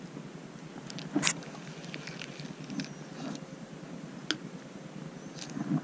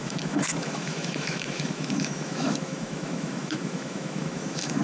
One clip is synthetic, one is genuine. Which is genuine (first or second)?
first